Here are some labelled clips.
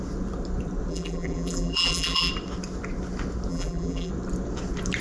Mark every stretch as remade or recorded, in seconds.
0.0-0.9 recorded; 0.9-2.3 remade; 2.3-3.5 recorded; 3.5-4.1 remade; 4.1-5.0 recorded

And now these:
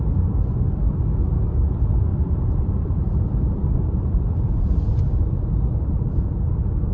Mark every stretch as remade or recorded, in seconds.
0.0-2.1 recorded; 2.1-6.2 remade; 6.2-6.9 recorded

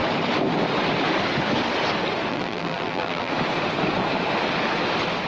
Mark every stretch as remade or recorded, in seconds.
0.0-2.3 recorded; 2.3-3.3 remade; 3.3-5.3 recorded

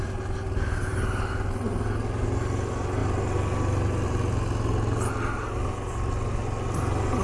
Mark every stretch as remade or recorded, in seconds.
0.0-7.2 recorded

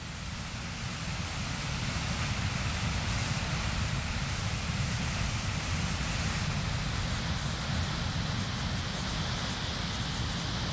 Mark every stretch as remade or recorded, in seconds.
0.0-3.2 recorded; 3.2-5.7 remade; 5.7-10.7 recorded

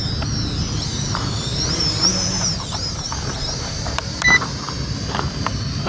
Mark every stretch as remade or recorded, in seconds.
0.0-0.9 recorded; 0.9-5.9 remade